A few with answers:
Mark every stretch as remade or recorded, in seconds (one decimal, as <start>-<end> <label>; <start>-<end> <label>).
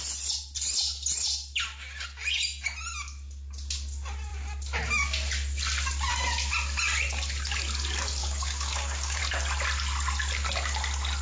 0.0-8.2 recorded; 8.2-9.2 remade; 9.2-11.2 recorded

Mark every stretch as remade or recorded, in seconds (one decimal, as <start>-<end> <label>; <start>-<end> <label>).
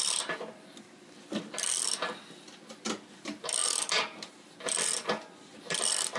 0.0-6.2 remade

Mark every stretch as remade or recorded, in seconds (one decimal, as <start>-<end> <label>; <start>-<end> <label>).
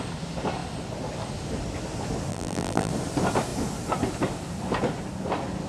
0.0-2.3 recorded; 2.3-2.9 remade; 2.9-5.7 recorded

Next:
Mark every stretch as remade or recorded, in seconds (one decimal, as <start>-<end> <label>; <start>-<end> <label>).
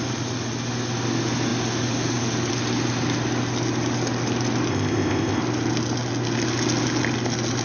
0.0-4.7 recorded; 4.7-5.4 remade; 5.4-7.6 recorded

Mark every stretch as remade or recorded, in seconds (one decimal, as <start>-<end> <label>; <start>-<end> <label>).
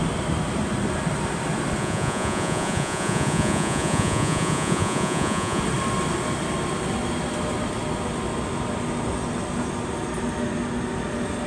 0.0-1.8 recorded; 1.8-5.6 remade; 5.6-11.5 recorded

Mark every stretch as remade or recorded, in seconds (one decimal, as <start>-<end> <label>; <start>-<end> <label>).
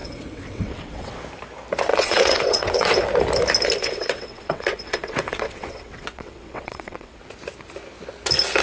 0.0-1.2 remade; 1.2-1.9 recorded; 1.9-3.0 remade; 3.0-3.8 recorded; 3.8-7.2 remade; 7.2-8.6 recorded